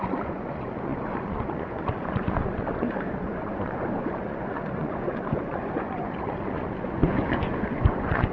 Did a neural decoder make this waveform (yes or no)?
yes